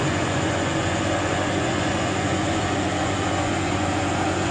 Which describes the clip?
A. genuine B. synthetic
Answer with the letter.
B